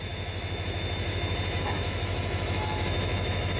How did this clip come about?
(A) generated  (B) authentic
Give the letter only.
A